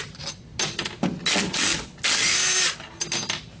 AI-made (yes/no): no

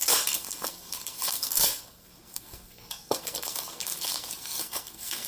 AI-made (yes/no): yes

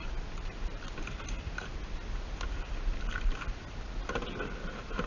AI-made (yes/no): no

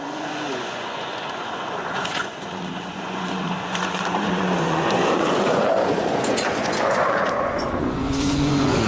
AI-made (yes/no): yes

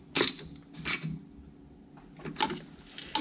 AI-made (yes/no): no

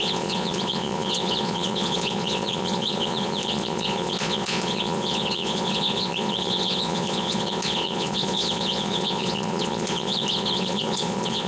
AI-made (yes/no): yes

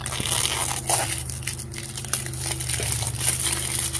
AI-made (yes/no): no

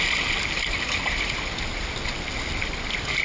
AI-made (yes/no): no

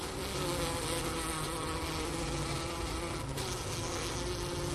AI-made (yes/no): no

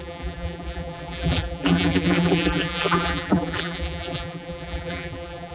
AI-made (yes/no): yes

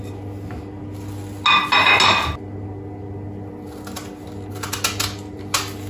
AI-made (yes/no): no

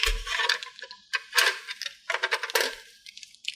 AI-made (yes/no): no